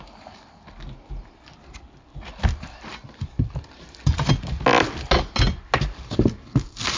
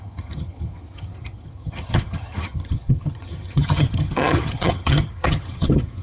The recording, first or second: first